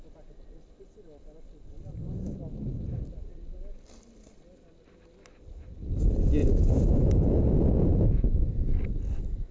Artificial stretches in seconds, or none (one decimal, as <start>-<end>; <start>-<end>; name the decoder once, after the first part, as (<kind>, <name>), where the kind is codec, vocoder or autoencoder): 6.4-7.2 (vocoder, Vocos)